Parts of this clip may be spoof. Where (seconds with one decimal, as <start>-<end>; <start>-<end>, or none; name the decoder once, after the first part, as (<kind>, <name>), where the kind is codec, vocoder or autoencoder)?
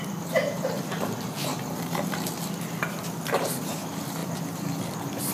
4.2-5.3 (vocoder, BigVGAN v2)